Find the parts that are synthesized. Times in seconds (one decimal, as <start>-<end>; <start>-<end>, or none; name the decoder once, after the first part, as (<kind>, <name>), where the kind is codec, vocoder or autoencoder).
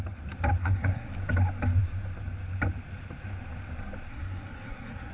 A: 0.6-1.1 (codec, SNAC); 4.1-5.1